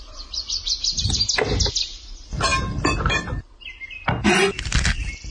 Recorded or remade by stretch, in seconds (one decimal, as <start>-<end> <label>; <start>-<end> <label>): 0.0-5.3 recorded